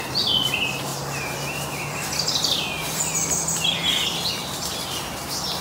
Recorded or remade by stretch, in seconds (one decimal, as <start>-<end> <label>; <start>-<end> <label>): 0.0-5.6 recorded

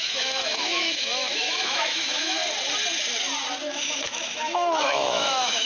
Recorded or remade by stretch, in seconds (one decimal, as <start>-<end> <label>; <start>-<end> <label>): 0.0-2.4 remade; 2.4-3.6 recorded; 3.6-5.7 remade

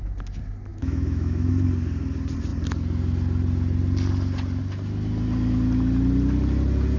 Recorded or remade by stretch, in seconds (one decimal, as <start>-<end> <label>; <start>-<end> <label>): 0.0-0.7 recorded; 0.7-1.5 remade; 1.5-7.0 recorded

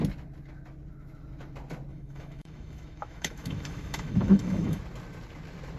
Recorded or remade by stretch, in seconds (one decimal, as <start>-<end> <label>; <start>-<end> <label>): 0.0-1.9 recorded; 1.9-4.8 remade; 4.8-5.8 recorded

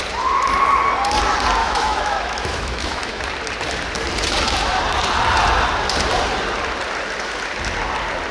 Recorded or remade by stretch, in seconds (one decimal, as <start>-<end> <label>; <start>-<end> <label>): 0.0-1.6 recorded; 1.6-3.2 remade; 3.2-8.3 recorded

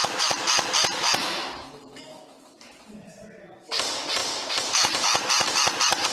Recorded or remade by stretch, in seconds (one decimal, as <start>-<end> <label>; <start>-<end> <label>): 0.0-1.2 recorded; 1.2-2.9 remade; 2.9-6.1 recorded

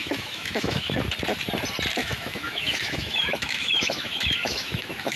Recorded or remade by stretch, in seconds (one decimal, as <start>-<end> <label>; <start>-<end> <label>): 0.0-1.0 remade; 1.0-2.0 recorded; 2.0-5.2 remade

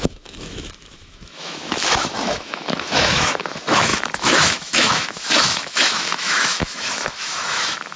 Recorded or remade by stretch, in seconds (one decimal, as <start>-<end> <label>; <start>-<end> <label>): 0.0-8.0 remade